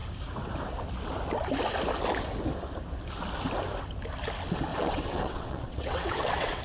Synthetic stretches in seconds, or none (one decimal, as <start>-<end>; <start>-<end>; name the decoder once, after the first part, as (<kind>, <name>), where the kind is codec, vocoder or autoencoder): 4.7-6.6 (vocoder, WaveNeXt)